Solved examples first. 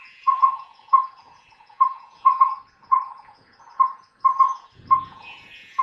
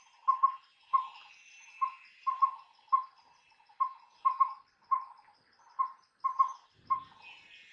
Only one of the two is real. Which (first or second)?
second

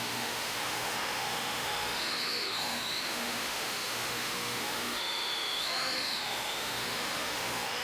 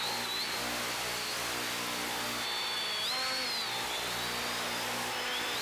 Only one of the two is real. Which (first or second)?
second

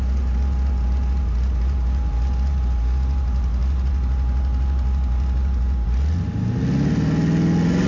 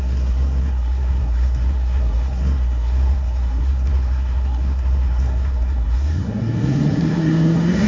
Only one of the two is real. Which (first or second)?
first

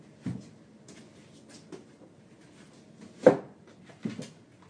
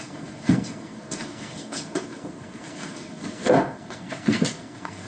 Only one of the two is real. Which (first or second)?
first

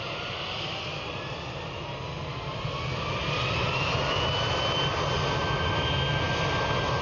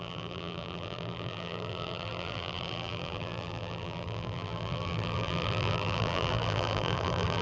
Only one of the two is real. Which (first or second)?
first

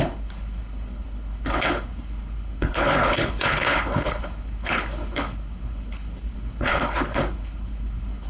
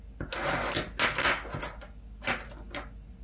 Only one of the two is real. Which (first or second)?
second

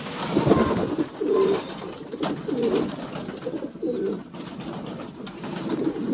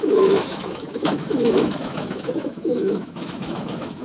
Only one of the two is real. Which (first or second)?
first